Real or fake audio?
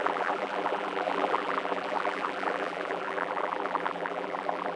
fake